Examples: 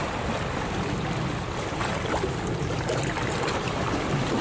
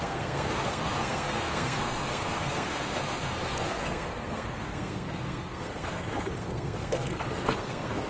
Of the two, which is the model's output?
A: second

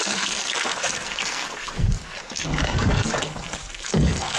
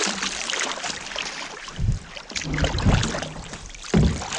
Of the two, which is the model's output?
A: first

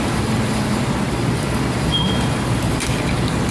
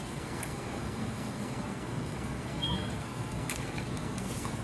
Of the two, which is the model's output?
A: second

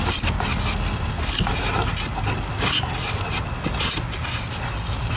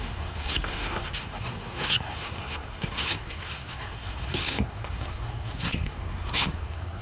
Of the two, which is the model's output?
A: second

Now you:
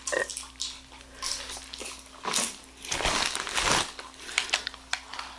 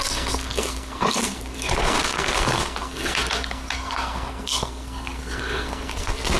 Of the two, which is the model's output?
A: second